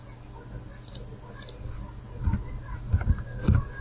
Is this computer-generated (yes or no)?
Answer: no